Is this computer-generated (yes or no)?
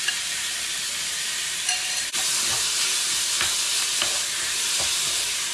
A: no